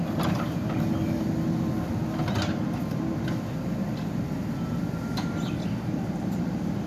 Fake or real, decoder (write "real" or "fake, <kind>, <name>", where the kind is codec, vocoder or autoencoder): real